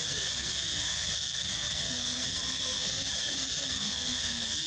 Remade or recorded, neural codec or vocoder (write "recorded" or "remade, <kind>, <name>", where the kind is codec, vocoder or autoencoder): remade, codec, SNAC